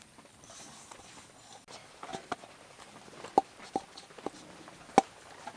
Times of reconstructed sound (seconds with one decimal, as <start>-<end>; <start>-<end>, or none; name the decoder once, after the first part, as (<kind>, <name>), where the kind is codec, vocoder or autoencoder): none

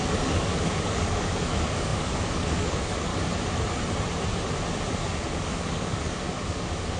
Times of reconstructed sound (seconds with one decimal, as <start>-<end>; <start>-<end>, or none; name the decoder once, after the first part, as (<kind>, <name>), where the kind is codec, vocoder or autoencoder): 0.0-3.1 (codec, DAC); 5.0-7.0